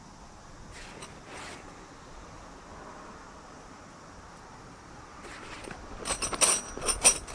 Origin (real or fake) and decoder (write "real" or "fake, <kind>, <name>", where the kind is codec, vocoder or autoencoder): real